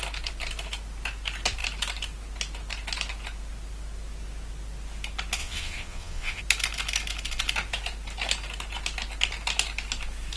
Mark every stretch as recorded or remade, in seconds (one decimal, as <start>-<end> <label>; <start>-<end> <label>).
0.0-5.4 recorded; 5.4-6.4 remade; 6.4-10.4 recorded